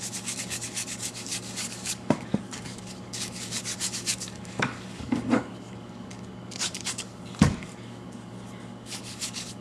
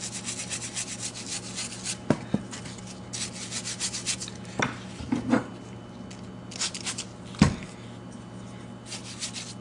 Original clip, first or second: second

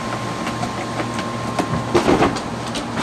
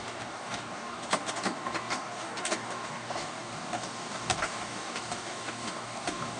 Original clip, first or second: first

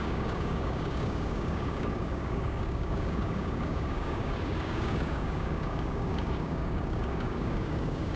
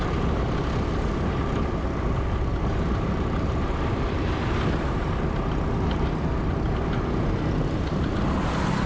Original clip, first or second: second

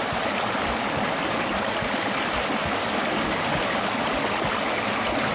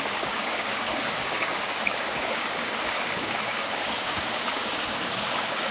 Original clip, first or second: first